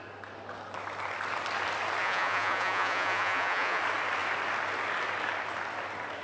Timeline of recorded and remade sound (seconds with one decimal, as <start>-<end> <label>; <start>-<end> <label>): 0.0-2.0 recorded; 2.0-3.8 remade; 3.8-6.2 recorded